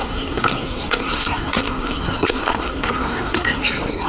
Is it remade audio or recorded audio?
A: remade